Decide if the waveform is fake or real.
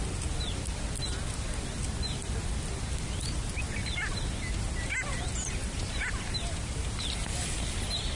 real